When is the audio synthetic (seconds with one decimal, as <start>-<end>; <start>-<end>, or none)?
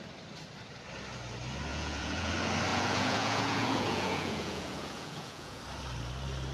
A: 1.7-2.3; 2.7-5.6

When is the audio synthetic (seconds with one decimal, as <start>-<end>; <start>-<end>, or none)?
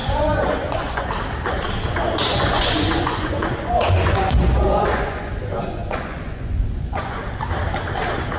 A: 0.0-1.1; 2.3-7.2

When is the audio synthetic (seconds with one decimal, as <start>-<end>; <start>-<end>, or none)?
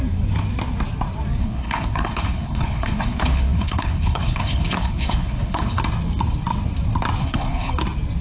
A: 1.4-5.8; 7.2-7.7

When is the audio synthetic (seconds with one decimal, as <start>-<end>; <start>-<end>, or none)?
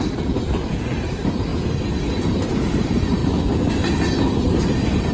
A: 0.0-1.5; 2.5-3.2; 4.6-5.1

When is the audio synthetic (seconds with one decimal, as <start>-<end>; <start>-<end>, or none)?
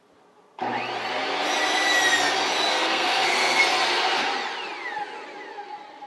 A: 2.7-3.6